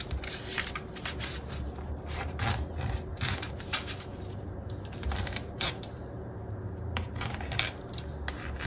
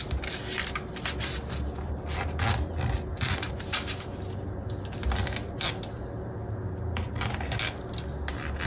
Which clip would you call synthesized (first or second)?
first